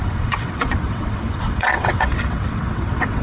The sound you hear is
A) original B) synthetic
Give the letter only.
B